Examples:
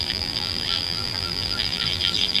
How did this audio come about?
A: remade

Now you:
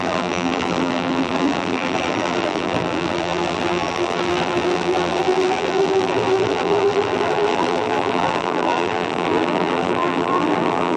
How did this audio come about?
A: remade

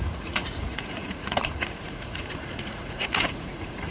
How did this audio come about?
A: remade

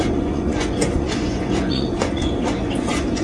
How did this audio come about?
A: remade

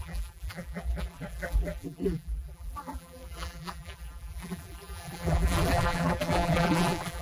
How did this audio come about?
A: remade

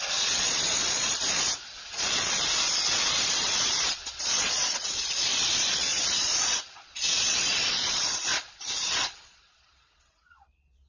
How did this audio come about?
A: remade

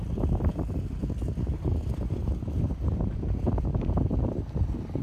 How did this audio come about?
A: recorded